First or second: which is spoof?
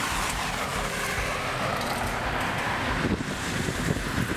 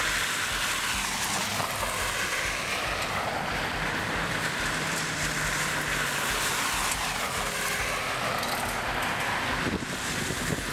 first